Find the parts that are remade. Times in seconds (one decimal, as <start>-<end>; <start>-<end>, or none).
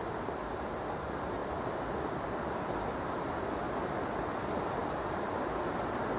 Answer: 1.4-4.3; 4.8-5.8